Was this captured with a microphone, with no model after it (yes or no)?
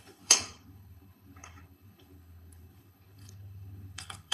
no